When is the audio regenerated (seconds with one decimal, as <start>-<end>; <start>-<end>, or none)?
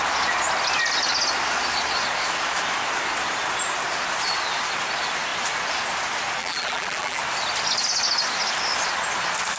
6.4-7.2